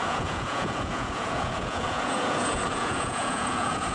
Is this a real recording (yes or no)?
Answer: no